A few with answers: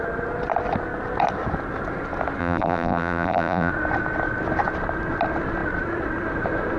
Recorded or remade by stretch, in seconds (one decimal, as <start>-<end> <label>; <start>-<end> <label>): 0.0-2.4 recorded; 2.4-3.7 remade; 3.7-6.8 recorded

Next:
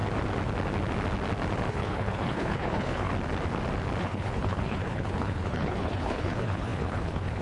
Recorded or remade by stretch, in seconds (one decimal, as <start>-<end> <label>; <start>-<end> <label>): 0.0-1.7 recorded; 1.7-3.1 remade; 3.1-4.0 recorded; 4.0-7.4 remade

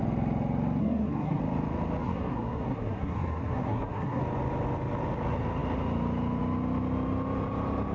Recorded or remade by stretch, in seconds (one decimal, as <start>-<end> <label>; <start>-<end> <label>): 0.0-0.8 recorded; 0.8-1.4 remade; 1.4-2.0 recorded; 2.0-4.2 remade; 4.2-7.9 recorded